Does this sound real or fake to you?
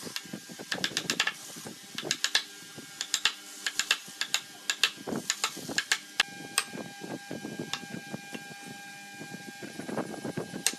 real